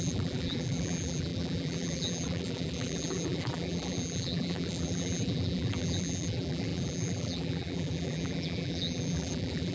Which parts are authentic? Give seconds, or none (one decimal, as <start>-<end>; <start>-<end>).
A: none